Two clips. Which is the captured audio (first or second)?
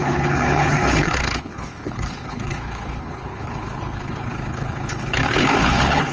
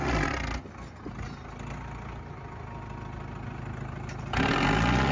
second